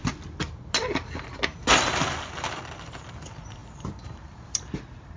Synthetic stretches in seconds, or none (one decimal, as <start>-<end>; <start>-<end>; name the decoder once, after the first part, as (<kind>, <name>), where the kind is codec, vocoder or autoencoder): 3.6-4.8 (vocoder, BigVGAN v2)